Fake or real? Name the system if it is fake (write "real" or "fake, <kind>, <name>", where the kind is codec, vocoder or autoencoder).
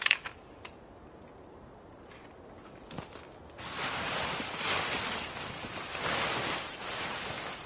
real